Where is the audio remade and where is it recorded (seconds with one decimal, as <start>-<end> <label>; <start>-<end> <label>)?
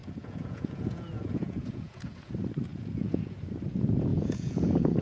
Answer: 0.0-2.3 remade; 2.3-2.7 recorded; 2.7-3.4 remade; 3.4-4.1 recorded; 4.1-5.0 remade